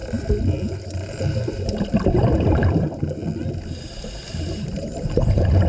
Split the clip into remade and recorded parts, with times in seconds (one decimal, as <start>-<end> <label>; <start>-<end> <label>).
0.0-3.2 remade; 3.2-4.5 recorded; 4.5-5.7 remade